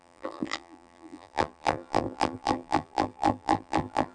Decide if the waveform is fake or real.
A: fake